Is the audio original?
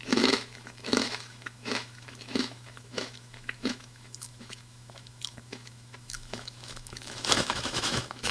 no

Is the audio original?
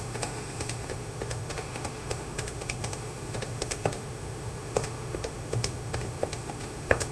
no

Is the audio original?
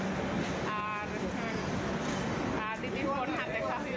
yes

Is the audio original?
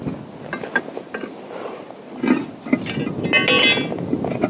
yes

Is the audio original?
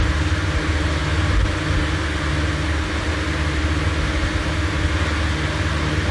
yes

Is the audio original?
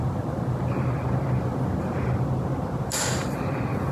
yes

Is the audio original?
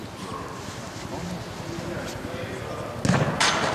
yes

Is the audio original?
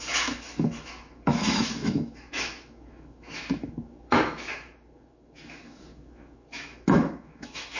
no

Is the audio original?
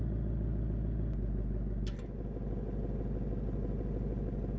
yes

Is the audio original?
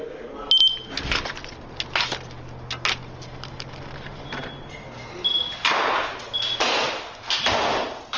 yes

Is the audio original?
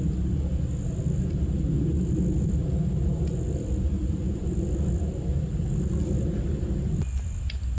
yes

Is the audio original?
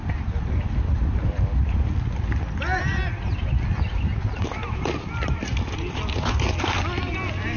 yes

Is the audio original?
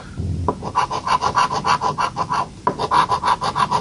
yes